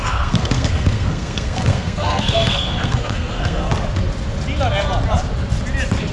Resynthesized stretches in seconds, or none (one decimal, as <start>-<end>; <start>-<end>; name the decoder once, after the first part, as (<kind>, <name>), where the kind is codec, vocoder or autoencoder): 0.0-3.7 (codec, SNAC)